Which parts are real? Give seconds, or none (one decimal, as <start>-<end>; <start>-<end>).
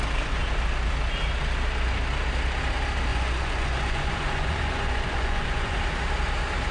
0.0-3.1; 5.8-6.7